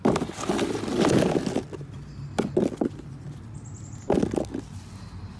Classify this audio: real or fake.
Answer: real